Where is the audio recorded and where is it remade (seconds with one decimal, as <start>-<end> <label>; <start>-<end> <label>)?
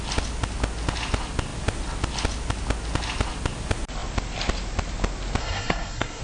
0.0-5.4 recorded; 5.4-6.2 remade